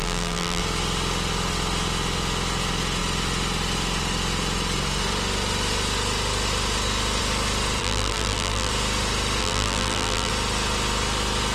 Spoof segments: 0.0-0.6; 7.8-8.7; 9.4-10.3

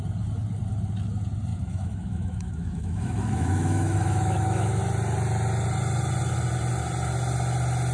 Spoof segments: 1.5-4.8